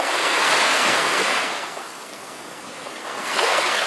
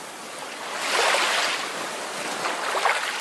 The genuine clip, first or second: second